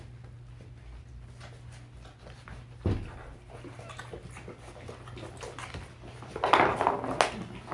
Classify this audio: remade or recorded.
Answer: recorded